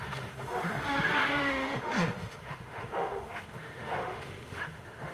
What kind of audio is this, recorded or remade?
remade